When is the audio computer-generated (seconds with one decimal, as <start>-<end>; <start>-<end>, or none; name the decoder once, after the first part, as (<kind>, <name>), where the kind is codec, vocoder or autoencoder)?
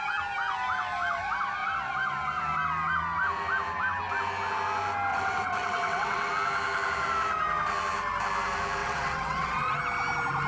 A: 5.1-6.3 (vocoder, WaveNeXt); 8.8-9.8